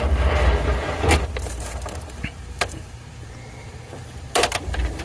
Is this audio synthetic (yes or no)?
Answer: no